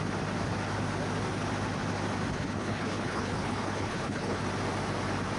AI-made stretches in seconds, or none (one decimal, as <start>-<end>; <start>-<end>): 2.3-4.4